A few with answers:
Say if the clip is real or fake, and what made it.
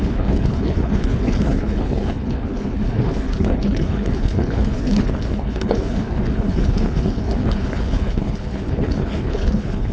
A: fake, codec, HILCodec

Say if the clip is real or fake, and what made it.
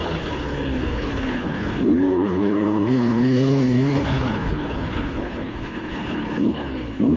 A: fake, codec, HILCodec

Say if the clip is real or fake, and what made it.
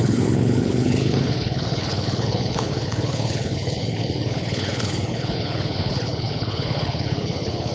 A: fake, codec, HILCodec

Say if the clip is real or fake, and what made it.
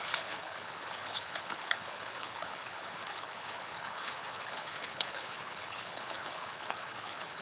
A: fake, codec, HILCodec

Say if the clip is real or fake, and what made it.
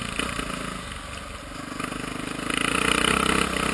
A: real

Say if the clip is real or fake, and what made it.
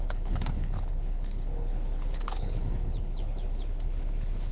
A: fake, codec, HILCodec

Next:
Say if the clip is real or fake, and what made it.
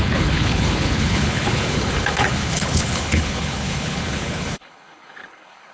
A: fake, codec, HILCodec